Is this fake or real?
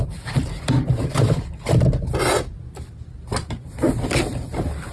real